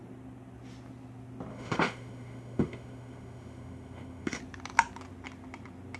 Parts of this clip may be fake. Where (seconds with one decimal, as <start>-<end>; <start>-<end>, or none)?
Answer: 1.5-4.4